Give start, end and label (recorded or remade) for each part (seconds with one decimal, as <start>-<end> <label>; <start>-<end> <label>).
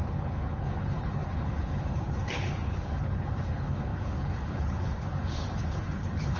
0.0-6.4 remade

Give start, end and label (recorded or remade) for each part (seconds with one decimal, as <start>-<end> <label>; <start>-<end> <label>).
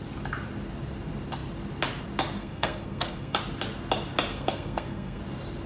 0.0-2.4 recorded; 2.4-3.4 remade; 3.4-4.3 recorded; 4.3-5.2 remade; 5.2-5.7 recorded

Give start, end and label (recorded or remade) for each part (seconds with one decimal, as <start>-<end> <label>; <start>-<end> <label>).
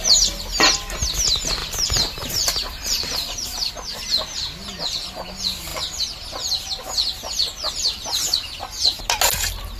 0.0-1.6 recorded; 1.6-3.7 remade; 3.7-9.8 recorded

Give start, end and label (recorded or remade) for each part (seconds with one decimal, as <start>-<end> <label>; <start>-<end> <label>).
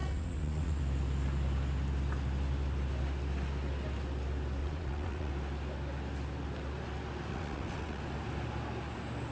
0.0-0.8 remade; 0.8-4.6 recorded; 4.6-5.3 remade; 5.3-7.3 recorded; 7.3-8.0 remade; 8.0-9.3 recorded